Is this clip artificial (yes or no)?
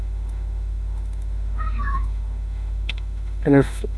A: yes